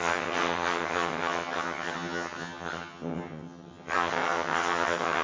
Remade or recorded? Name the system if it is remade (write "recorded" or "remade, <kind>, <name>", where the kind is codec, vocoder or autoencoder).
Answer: remade, vocoder, HiFi-GAN